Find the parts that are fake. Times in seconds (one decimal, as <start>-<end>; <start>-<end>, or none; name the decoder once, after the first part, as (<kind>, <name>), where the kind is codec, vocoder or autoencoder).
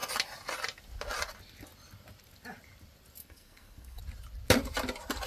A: 3.2-4.0 (codec, SNAC)